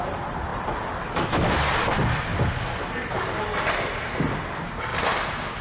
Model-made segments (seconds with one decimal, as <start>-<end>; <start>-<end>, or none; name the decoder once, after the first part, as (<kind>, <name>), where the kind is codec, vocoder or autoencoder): 0.0-2.3 (vocoder, BigVGAN v2); 3.7-4.9